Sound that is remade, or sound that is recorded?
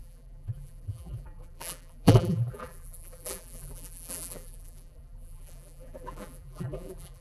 remade